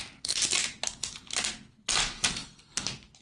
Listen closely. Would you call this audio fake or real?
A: real